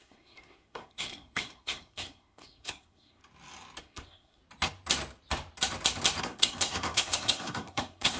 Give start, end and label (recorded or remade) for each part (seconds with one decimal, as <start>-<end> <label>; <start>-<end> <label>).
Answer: 0.0-3.2 remade; 3.2-3.8 recorded; 3.8-4.4 remade; 4.4-6.2 recorded; 6.2-8.2 remade